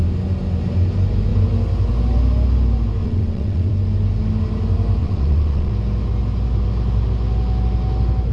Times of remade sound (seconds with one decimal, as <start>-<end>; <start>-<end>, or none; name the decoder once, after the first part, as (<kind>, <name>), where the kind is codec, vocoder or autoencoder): 3.0-3.7 (vocoder, WaveNeXt); 5.0-5.7